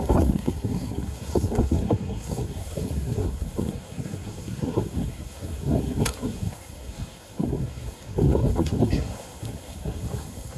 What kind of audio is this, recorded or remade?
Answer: remade